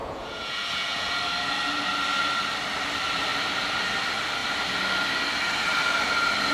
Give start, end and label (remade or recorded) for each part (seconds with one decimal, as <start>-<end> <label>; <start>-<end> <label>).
0.0-1.2 remade; 1.2-6.5 recorded